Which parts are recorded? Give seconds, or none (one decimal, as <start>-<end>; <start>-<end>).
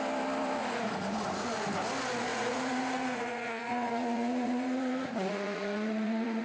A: 0.0-0.6; 1.5-2.3